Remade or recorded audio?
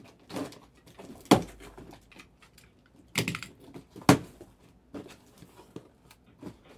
recorded